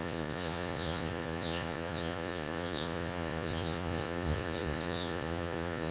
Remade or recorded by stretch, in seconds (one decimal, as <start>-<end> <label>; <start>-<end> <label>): 0.0-5.9 remade